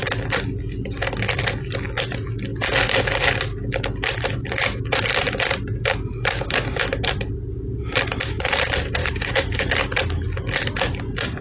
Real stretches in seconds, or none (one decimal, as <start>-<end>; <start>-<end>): 0.0-9.0; 9.7-11.4